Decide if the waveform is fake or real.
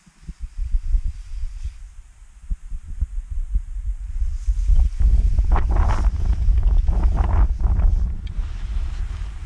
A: real